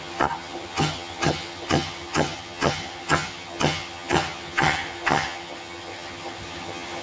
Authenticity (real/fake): fake